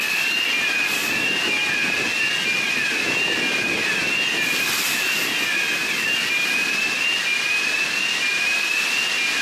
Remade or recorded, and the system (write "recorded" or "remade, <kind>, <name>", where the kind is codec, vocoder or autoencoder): recorded